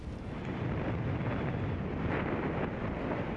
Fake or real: real